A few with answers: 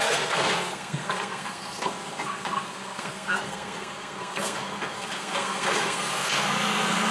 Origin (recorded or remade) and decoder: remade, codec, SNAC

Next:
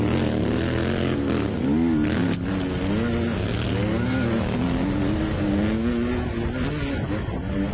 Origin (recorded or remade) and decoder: recorded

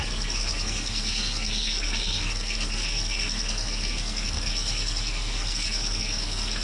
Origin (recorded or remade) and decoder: remade, codec, SNAC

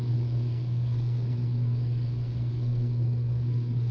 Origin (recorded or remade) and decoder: remade, codec, SNAC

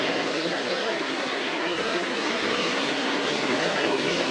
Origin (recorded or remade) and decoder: remade, codec, SNAC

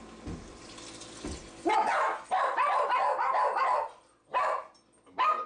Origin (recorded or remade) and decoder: recorded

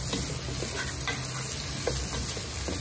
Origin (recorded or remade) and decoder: recorded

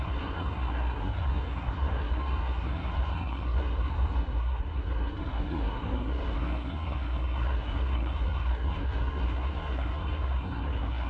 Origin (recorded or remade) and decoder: remade, codec, SNAC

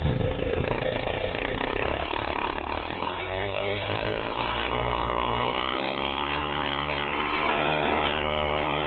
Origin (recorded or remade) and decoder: remade, codec, SNAC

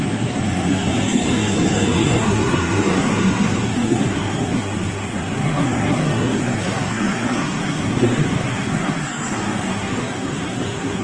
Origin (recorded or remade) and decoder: remade, codec, SNAC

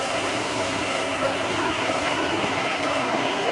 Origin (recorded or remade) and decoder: remade, codec, SNAC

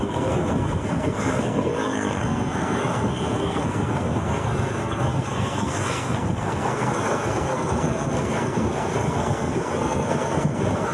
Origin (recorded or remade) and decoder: remade, codec, SNAC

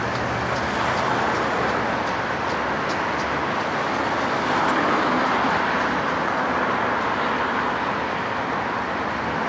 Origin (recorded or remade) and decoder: recorded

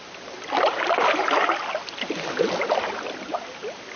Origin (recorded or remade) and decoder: recorded